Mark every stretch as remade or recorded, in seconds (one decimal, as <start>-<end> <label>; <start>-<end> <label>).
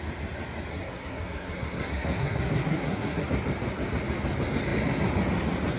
0.0-0.7 recorded; 0.7-3.2 remade; 3.2-5.8 recorded